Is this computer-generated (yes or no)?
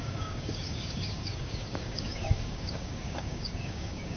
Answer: yes